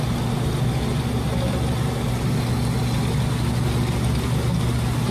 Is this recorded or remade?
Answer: recorded